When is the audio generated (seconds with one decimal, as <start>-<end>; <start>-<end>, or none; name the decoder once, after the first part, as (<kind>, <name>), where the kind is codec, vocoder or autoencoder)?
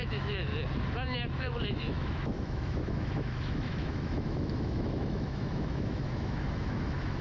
0.0-0.5 (autoencoder, DAC-VAE); 1.4-7.2